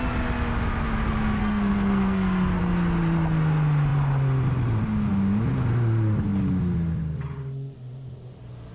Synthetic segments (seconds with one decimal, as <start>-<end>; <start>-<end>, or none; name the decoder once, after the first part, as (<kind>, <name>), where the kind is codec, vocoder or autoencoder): 1.4-2.6 (codec, SNAC)

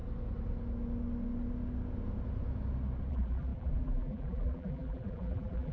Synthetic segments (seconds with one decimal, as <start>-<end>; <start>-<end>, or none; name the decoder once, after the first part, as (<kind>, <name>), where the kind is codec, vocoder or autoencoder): 3.1-5.7 (vocoder, BigVGAN v2)

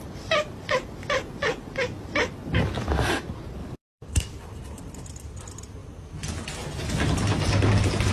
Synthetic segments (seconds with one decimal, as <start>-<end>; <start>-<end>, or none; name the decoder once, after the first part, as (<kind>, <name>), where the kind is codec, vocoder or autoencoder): 3.6-4.4 (codec, DAC)

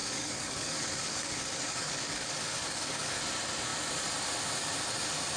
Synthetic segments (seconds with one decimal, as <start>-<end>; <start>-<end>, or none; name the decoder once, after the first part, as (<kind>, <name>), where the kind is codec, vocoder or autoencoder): 0.0-3.2 (codec, DAC)

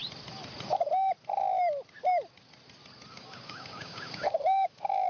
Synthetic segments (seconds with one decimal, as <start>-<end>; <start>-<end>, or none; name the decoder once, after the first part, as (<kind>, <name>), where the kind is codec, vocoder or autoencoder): 3.1-5.1 (codec, DAC)